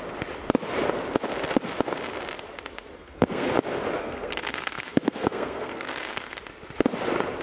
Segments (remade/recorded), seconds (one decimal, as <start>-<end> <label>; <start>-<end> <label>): 0.0-3.0 recorded; 3.0-3.5 remade; 3.5-4.0 recorded; 4.0-6.4 remade; 6.4-7.4 recorded